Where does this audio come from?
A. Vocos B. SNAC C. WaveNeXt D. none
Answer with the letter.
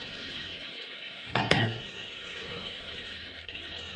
B